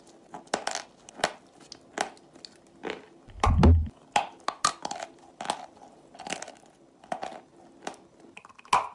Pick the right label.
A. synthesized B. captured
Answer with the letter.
B